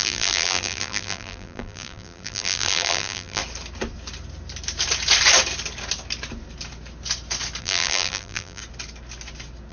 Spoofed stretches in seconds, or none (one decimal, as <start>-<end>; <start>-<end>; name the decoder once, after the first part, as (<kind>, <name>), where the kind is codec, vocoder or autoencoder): 0.0-3.4 (vocoder, BigVGAN v2); 7.6-8.6